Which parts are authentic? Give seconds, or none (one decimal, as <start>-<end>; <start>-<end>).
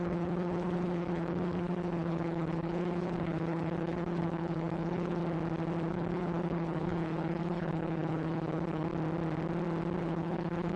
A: 5.2-5.9; 8.9-10.0